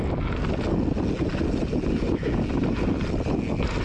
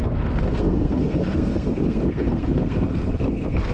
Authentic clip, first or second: first